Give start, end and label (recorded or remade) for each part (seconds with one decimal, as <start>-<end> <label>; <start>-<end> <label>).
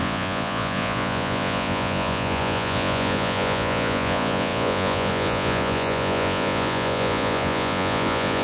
0.0-8.4 remade